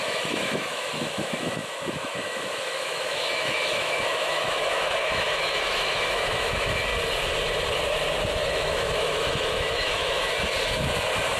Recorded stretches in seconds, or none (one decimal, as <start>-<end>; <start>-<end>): 6.9-8.5; 10.3-11.4